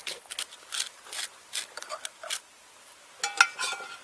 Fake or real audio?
real